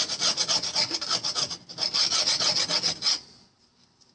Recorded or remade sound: recorded